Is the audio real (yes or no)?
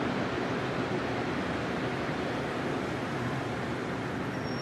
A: yes